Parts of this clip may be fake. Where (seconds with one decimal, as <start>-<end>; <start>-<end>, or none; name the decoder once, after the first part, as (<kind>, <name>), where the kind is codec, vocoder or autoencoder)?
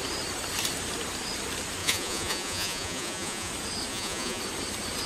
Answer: 1.8-3.5 (vocoder, Vocos); 3.9-4.4